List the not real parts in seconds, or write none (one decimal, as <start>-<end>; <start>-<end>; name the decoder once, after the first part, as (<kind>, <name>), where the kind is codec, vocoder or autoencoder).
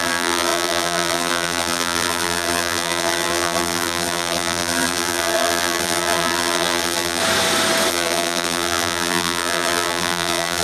0.0-7.2 (vocoder, BigVGAN v2); 7.9-10.6